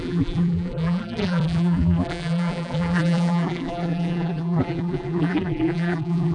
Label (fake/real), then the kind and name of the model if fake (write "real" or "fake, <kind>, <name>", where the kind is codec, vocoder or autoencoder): fake, vocoder, BigVGAN v2